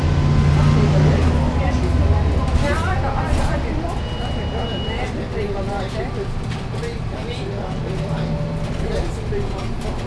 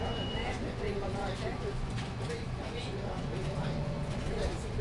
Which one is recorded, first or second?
first